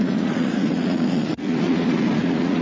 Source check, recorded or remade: remade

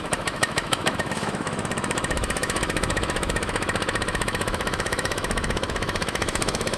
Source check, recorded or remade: remade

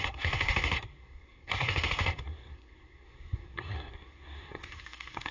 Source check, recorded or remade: remade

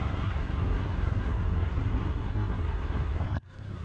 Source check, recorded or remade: remade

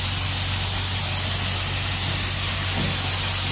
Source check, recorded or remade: recorded